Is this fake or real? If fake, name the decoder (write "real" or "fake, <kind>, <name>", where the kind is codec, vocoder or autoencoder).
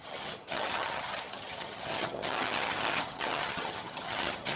fake, vocoder, HiFi-GAN